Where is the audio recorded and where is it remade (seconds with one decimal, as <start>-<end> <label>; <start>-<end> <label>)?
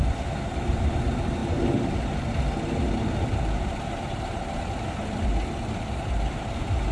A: 0.0-6.9 recorded